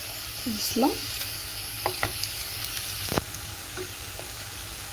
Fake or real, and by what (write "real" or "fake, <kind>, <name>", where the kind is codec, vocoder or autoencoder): fake, codec, DAC